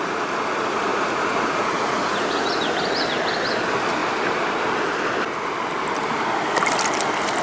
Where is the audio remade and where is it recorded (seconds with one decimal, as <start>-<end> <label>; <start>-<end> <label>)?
0.0-0.9 recorded; 0.9-2.5 remade; 2.5-7.4 recorded